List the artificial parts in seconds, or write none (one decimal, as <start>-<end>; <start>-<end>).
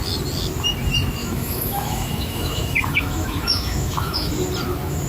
1.2-4.3